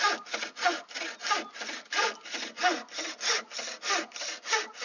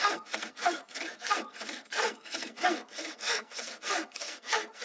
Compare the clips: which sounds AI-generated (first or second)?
second